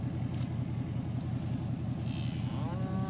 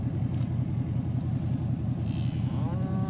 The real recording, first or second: first